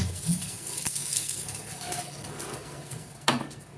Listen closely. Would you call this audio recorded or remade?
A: remade